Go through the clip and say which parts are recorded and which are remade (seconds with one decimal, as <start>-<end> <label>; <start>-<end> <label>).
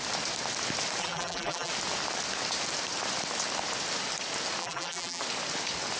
0.0-1.0 recorded; 1.0-1.7 remade; 1.7-4.6 recorded; 4.6-5.2 remade; 5.2-6.0 recorded